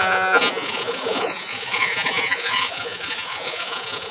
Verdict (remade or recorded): remade